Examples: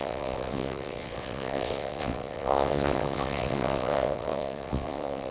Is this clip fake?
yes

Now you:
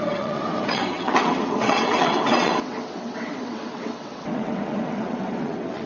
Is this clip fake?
yes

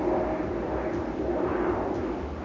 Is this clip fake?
no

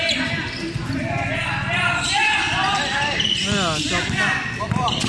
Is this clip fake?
no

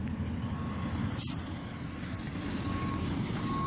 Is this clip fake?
no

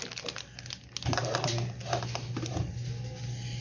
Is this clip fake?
no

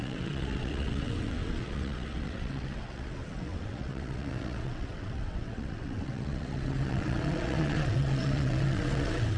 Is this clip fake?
yes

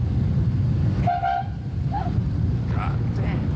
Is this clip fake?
no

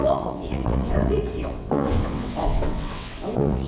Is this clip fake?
yes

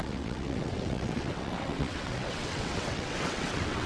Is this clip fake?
yes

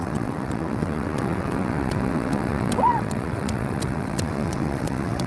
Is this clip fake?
yes